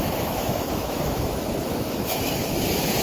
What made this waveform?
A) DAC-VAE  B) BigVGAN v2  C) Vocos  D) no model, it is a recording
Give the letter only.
A